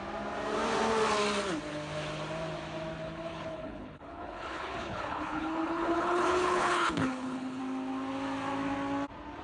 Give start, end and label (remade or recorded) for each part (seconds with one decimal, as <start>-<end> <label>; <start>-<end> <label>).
0.0-3.0 recorded; 3.0-7.6 remade; 7.6-9.4 recorded

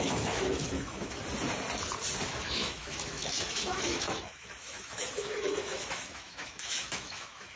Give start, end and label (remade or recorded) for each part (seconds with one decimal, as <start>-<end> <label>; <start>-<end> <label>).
0.0-1.2 remade; 1.2-2.3 recorded; 2.3-7.6 remade

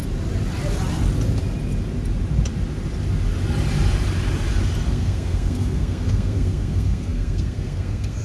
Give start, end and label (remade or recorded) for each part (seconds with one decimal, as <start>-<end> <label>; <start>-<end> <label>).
0.0-4.9 recorded; 4.9-8.2 remade

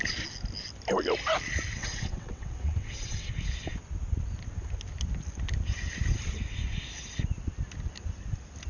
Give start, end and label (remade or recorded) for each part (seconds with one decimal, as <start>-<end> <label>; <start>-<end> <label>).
0.0-1.8 recorded; 1.8-3.3 remade; 3.3-8.7 recorded

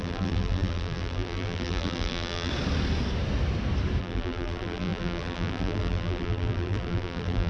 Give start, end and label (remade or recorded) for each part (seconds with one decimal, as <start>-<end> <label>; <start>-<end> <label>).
0.0-2.5 remade; 2.5-4.0 recorded; 4.0-7.5 remade